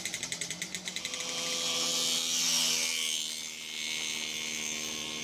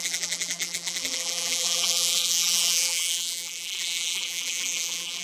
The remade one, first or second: second